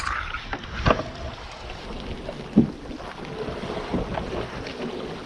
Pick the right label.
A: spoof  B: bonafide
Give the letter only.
B